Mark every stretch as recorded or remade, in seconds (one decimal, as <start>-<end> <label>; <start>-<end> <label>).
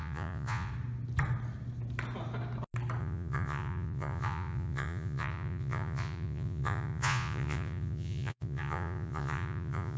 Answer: 0.0-0.7 remade; 0.7-3.0 recorded; 3.0-10.0 remade